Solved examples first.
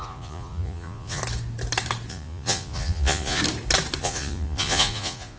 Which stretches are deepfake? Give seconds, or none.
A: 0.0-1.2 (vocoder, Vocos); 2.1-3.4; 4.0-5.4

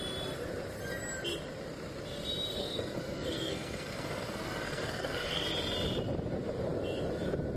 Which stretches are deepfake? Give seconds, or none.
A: 2.6-5.5 (codec, SNAC)

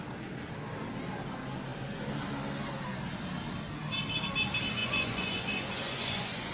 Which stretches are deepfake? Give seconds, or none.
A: 4.8-6.5 (vocoder, Vocos)

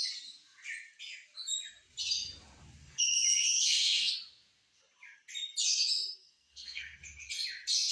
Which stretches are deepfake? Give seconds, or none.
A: 2.8-4.1 (codec, SNAC); 6.2-7.0

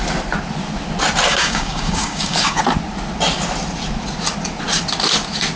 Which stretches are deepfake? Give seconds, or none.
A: 1.3-2.6 (codec, DAC)

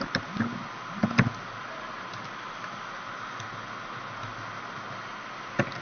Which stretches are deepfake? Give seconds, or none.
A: none

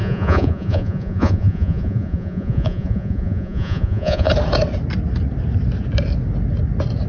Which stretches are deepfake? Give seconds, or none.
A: 0.0-4.3 (vocoder, Vocos)

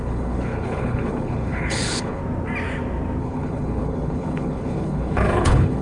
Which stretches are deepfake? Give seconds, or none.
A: 0.0-2.2 (codec, HILCodec); 3.2-5.8